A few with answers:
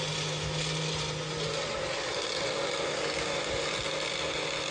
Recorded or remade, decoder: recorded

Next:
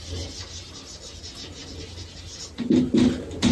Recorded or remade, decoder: recorded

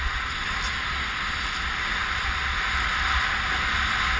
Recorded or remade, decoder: recorded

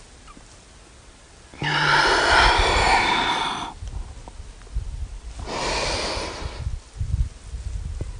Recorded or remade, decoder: recorded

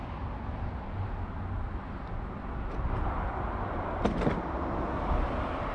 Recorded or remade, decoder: recorded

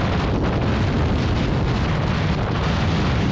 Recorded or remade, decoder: recorded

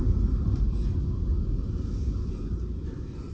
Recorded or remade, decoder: recorded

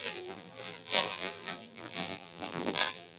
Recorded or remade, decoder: remade, vocoder, BigVGAN v2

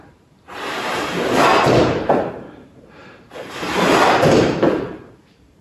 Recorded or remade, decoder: remade, vocoder, BigVGAN v2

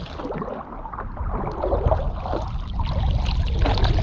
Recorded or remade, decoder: recorded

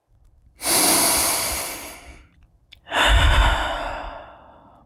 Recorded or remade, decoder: remade, vocoder, BigVGAN v2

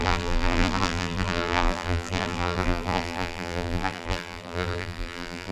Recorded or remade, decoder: remade, vocoder, BigVGAN v2